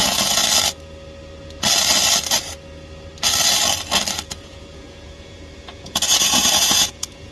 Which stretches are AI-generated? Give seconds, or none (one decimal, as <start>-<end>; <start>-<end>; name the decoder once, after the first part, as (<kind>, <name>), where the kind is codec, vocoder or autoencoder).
0.0-0.4 (vocoder, Vocos); 4.3-7.3